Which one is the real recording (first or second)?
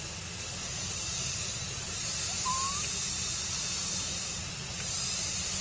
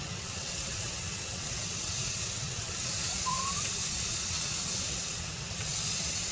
first